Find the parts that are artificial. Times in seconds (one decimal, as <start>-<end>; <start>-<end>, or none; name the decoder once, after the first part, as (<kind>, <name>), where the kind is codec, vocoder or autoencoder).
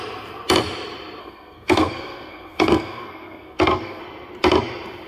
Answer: 1.2-4.0 (codec, SNAC)